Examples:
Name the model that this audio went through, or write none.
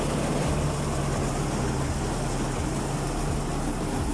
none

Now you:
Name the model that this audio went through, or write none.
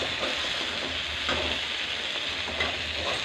none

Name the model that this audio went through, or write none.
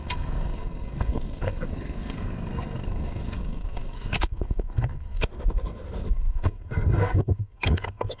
codec, SNAC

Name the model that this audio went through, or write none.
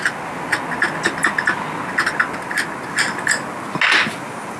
none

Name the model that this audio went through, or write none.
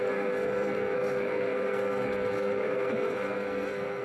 codec, SNAC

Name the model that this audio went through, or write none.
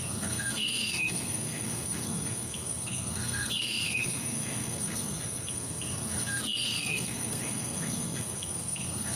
codec, SNAC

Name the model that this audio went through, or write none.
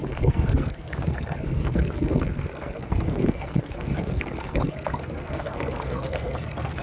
codec, SNAC